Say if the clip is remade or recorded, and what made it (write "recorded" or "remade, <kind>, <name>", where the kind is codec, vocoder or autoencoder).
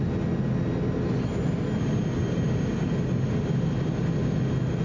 recorded